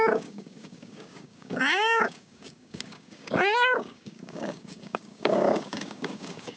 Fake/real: fake